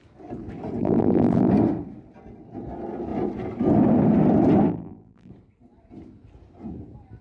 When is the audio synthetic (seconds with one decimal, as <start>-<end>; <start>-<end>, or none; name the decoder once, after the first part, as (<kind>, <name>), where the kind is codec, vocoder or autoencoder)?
0.8-1.5 (vocoder, BigVGAN v2); 4.7-5.3